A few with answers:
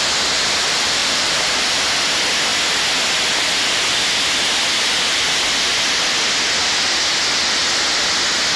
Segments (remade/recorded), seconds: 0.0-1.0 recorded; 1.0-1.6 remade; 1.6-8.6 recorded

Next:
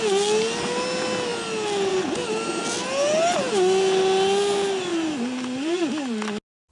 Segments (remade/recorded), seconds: 0.0-4.9 recorded; 4.9-5.8 remade; 5.8-6.7 recorded